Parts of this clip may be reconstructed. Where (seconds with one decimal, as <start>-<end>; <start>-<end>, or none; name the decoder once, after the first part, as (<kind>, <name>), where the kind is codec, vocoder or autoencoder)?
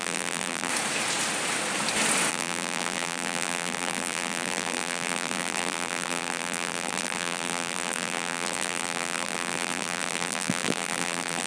0.0-0.7 (vocoder, BigVGAN v2); 2.3-11.5